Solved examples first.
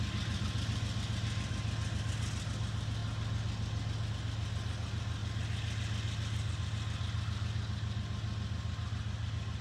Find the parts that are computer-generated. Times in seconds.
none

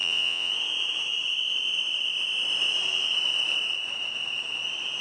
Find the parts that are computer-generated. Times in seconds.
0.0-0.5 (vocoder, Vocos)

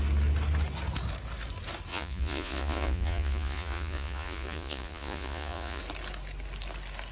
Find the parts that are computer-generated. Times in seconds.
1.9-5.8 (vocoder, Vocos)

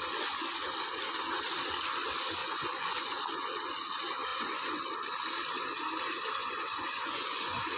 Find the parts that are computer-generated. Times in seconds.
2.4-3.2 (vocoder, Vocos); 4.3-4.8; 6.4-7.8

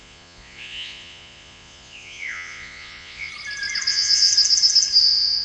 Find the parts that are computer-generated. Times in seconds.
0.0-3.3 (vocoder, Vocos); 3.9-4.3; 5.0-5.4